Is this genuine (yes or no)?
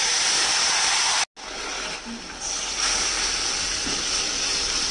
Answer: yes